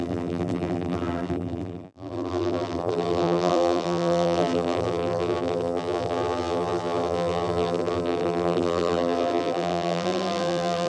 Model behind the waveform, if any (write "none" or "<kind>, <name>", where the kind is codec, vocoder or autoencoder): vocoder, BigVGAN v2